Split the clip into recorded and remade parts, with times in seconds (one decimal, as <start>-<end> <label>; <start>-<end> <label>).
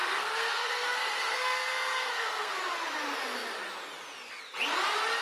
0.0-2.6 remade; 2.6-5.2 recorded